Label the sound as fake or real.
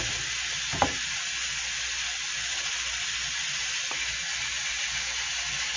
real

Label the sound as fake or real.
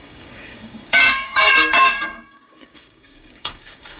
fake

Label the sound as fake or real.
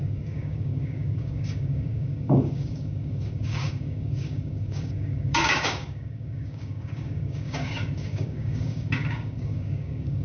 fake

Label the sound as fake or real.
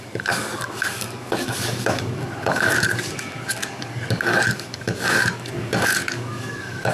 fake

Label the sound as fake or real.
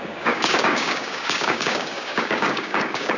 fake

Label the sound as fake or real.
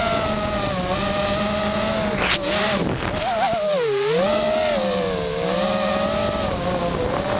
real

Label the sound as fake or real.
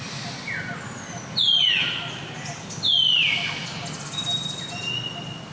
real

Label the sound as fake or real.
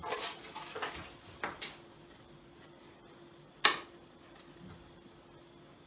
real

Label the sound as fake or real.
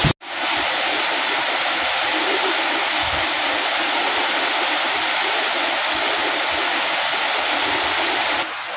real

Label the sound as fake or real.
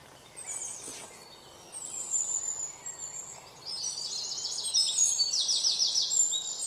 real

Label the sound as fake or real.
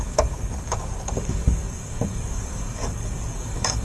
fake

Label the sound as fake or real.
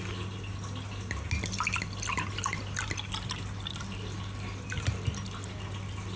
real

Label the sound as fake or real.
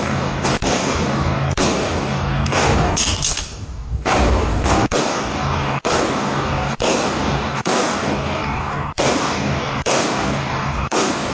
fake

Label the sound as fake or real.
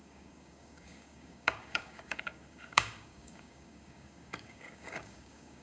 fake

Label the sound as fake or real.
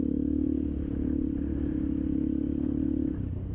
real